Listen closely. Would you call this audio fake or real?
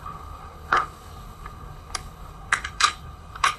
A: fake